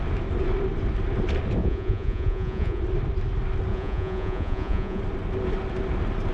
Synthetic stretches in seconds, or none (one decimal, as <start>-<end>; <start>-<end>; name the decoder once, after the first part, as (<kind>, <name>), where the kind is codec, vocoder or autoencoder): 1.6-2.8 (vocoder, Vocos); 3.7-5.0